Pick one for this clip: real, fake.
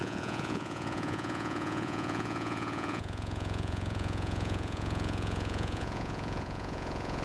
fake